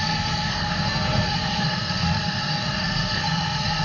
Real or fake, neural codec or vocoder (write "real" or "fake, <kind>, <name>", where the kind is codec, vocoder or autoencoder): fake, codec, SNAC